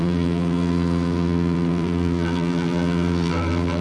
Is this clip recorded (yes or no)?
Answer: no